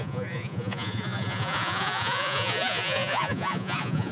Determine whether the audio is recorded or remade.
remade